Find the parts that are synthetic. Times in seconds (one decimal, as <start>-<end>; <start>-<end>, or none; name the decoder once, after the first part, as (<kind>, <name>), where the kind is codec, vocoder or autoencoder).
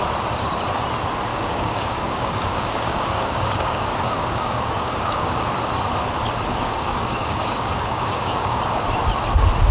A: 1.3-5.5 (codec, DAC); 6.5-8.6